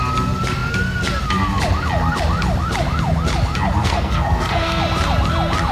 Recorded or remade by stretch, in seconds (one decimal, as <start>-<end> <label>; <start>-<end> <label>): 0.0-3.8 recorded; 3.8-4.8 remade; 4.8-5.7 recorded